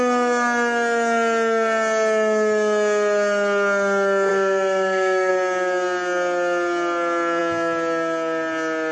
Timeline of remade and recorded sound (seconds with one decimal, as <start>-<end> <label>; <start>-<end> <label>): 0.0-4.3 recorded; 4.3-5.3 remade; 5.3-8.9 recorded